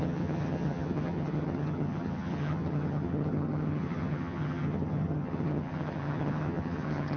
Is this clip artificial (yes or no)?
yes